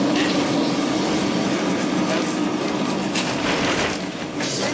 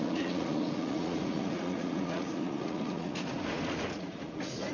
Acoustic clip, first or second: first